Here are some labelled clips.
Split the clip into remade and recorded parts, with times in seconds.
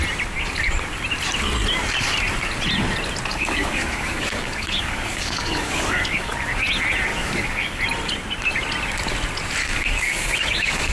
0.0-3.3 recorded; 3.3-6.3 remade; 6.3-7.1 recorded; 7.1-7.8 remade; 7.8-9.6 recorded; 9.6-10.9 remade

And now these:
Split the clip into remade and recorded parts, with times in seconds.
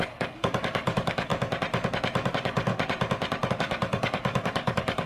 0.0-1.3 remade; 1.3-2.3 recorded; 2.3-2.7 remade; 2.7-3.5 recorded; 3.5-5.1 remade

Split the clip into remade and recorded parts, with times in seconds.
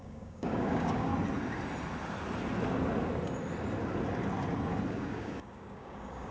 0.0-1.1 remade; 1.1-4.9 recorded; 4.9-6.3 remade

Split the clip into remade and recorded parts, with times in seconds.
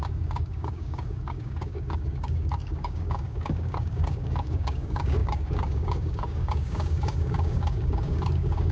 0.0-8.7 remade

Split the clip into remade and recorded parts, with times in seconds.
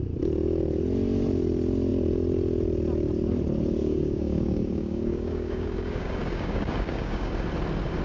0.0-3.8 recorded; 3.8-7.3 remade; 7.3-8.0 recorded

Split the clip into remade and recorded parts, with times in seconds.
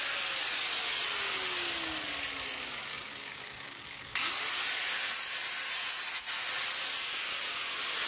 0.0-2.9 recorded; 2.9-4.3 remade; 4.3-8.1 recorded